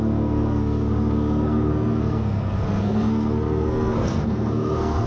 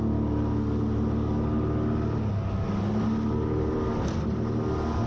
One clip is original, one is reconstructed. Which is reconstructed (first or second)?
first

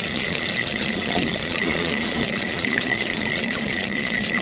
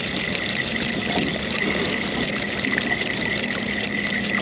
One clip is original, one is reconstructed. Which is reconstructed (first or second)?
first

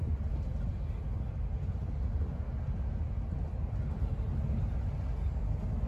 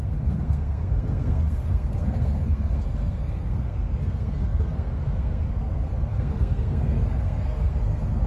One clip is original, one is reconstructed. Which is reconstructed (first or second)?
second